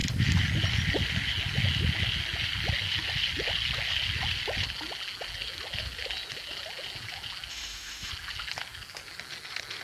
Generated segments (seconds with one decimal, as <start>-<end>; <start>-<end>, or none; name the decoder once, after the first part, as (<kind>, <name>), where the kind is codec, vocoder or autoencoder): 7.5-8.1 (autoencoder, DAC-VAE)